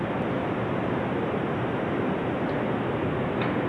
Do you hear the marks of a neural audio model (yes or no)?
no